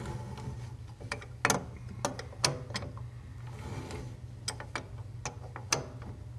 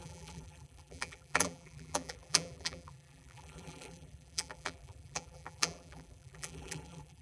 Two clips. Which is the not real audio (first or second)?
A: second